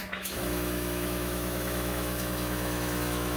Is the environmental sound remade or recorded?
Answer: remade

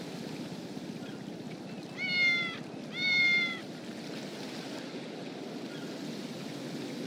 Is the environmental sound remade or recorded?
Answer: recorded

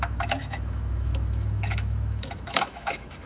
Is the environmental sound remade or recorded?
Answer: remade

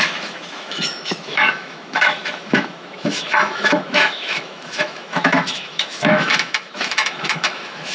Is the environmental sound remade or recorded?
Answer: remade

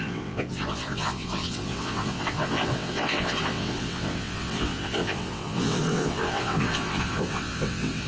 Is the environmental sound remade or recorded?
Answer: remade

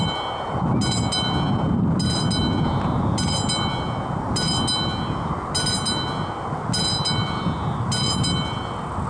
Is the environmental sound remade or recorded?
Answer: recorded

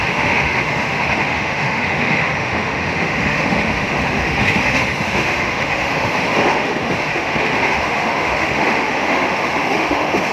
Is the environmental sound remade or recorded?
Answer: remade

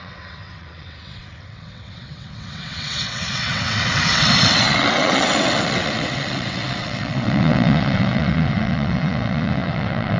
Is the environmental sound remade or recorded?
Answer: remade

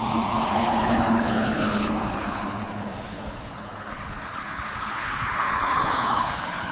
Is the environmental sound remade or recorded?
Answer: remade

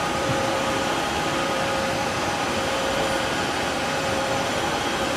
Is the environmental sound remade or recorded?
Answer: remade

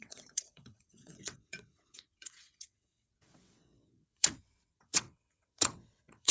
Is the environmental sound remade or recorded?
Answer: remade